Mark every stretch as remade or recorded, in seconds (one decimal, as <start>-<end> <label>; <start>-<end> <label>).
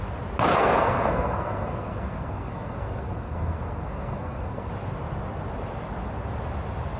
0.0-0.5 recorded; 0.5-4.7 remade; 4.7-7.0 recorded